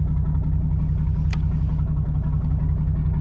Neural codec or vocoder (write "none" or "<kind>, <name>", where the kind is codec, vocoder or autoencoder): none